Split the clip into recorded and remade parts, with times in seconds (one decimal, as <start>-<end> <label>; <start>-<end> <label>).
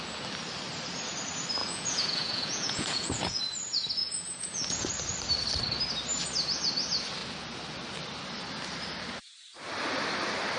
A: 0.0-1.6 recorded; 1.6-3.4 remade; 3.4-4.0 recorded; 4.0-4.9 remade; 4.9-10.6 recorded